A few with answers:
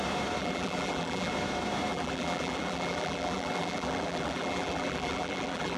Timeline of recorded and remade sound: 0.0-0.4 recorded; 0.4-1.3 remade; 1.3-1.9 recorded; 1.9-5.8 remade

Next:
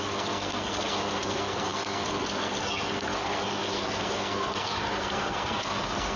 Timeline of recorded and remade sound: 0.0-6.2 remade

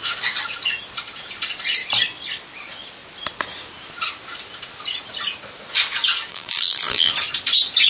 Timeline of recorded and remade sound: 0.0-6.3 recorded; 6.3-7.1 remade; 7.1-7.9 recorded

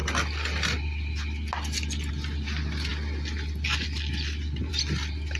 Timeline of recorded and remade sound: 0.0-5.4 recorded